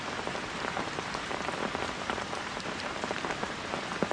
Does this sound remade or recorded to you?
remade